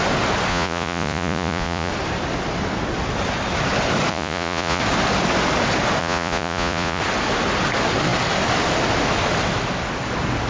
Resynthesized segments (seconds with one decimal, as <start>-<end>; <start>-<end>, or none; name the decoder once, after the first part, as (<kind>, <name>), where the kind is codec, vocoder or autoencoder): 0.5-1.9 (vocoder, Vocos); 4.1-4.8; 6.0-7.0